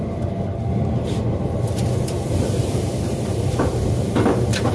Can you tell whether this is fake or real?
fake